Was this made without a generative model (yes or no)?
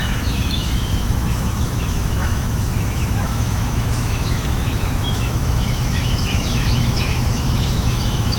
no